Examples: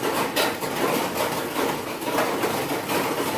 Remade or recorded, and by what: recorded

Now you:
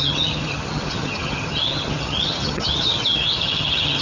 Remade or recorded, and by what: remade, vocoder, HiFi-GAN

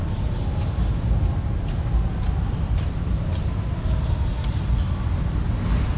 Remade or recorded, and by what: recorded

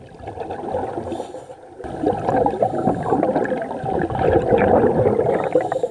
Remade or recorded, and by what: recorded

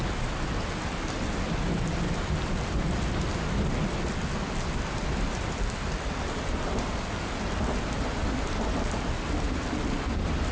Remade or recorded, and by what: recorded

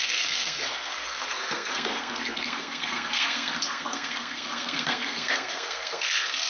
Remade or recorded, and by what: remade, codec, SNAC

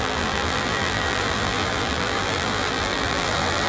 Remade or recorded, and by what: remade, vocoder, BigVGAN v2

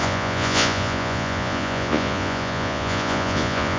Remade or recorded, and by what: remade, vocoder, Vocos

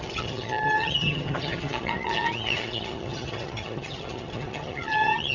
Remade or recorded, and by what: remade, vocoder, HiFi-GAN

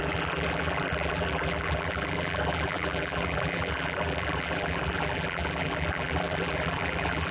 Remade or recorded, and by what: remade, vocoder, BigVGAN v2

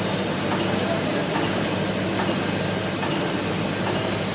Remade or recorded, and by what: recorded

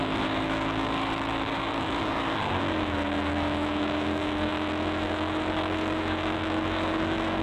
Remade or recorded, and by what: remade, codec, DAC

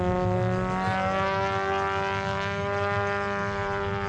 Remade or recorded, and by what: recorded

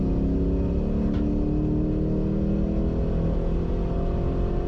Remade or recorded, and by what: recorded